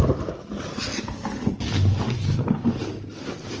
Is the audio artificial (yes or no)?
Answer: no